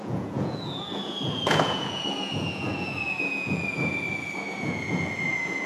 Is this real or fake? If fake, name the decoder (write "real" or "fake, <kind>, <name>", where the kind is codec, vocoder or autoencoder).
fake, vocoder, Vocos